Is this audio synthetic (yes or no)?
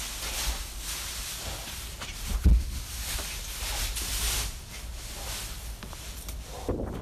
no